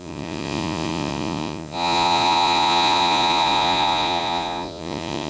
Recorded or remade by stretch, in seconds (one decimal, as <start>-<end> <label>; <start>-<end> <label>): 0.0-5.3 remade